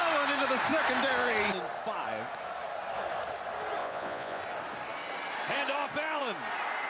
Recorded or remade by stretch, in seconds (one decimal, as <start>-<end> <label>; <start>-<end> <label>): 0.0-3.8 recorded; 3.8-4.4 remade; 4.4-6.9 recorded